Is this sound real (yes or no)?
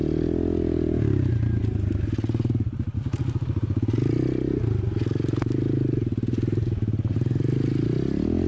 yes